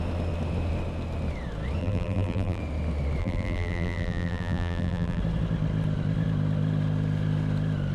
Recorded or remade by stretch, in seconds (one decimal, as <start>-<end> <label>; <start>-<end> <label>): 0.0-1.8 recorded; 1.8-2.6 remade; 2.6-3.2 recorded; 3.2-5.2 remade; 5.2-7.9 recorded